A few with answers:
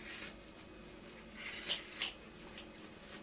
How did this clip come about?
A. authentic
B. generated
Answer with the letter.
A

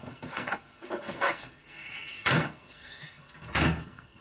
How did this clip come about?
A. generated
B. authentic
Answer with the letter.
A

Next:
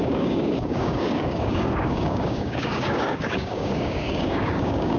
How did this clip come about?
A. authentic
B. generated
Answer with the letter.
B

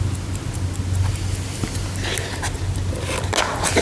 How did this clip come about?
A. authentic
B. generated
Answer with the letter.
A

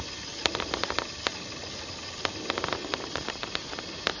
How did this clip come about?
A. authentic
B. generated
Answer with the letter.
A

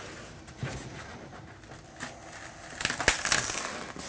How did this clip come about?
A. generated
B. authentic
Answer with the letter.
B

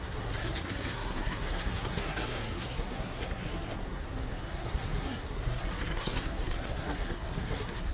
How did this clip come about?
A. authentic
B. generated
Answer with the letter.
B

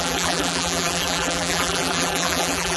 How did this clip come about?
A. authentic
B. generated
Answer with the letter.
B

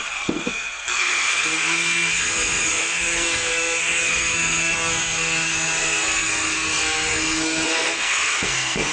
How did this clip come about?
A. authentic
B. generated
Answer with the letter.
B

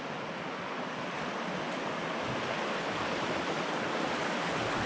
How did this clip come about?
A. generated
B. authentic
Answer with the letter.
B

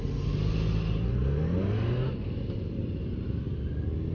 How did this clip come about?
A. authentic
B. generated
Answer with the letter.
A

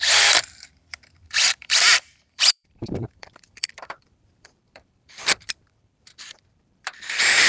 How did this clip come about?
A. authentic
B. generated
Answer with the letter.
B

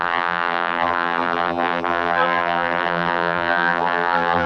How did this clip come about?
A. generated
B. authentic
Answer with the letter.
A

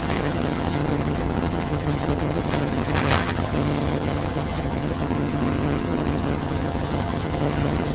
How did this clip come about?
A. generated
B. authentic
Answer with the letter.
A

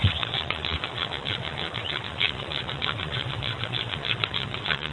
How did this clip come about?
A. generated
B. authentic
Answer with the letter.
A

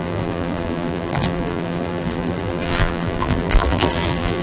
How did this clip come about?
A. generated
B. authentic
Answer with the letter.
A